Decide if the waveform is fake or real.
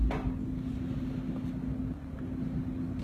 real